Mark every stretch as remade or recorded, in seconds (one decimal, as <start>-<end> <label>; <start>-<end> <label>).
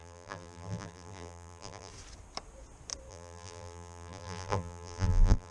0.0-1.9 remade; 1.9-3.1 recorded; 3.1-5.5 remade